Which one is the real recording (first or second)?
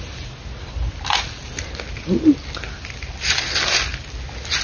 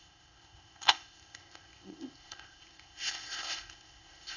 first